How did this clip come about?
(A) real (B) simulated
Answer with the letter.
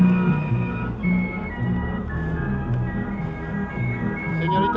A